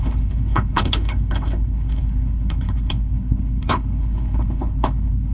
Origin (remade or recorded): remade